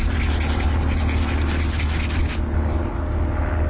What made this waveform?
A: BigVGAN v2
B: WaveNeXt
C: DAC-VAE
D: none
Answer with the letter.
D